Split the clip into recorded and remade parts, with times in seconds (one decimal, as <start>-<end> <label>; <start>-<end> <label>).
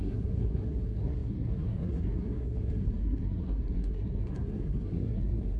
0.0-5.6 remade